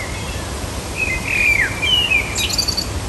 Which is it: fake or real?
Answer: real